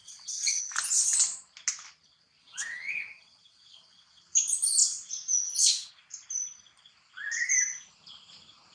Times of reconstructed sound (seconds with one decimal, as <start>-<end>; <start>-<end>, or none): 0.0-0.6; 2.4-4.2